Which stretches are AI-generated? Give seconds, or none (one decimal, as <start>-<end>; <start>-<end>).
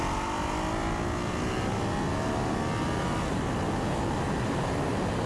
none